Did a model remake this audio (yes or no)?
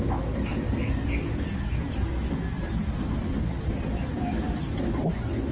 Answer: no